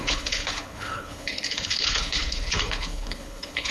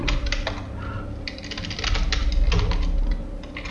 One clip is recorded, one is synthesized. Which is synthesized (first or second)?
first